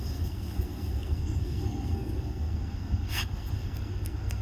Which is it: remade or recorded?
remade